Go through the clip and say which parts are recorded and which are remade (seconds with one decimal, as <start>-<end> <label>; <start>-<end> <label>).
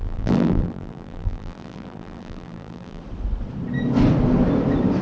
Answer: 0.0-3.0 remade; 3.0-5.0 recorded